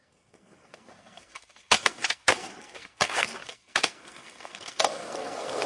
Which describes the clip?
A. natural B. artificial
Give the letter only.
B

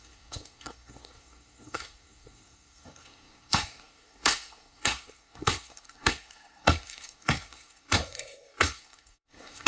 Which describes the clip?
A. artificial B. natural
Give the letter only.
A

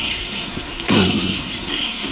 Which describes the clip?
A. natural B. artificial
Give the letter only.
B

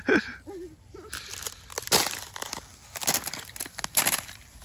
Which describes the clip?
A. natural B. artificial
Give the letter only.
A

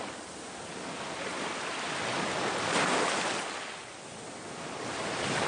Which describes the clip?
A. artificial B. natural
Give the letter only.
B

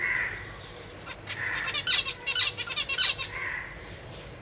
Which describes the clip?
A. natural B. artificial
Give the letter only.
A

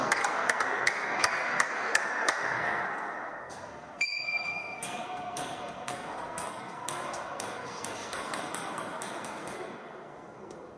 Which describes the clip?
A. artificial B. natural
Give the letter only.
A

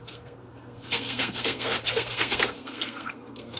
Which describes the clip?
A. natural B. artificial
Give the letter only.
B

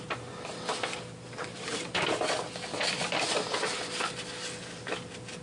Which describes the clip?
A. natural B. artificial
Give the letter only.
A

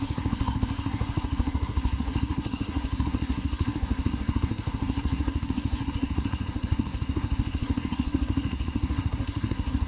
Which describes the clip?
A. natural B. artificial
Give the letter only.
B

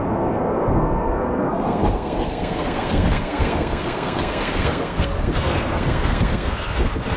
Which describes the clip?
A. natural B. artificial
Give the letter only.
B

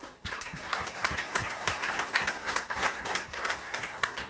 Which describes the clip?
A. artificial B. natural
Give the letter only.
A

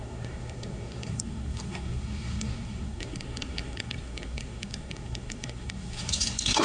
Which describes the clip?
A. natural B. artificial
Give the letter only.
B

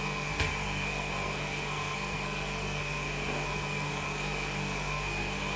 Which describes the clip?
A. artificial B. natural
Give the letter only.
A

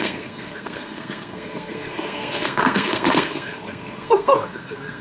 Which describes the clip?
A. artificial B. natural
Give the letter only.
A